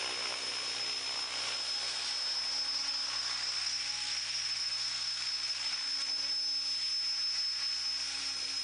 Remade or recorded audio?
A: recorded